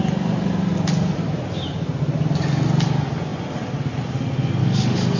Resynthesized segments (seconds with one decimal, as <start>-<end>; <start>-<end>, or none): 4.6-5.2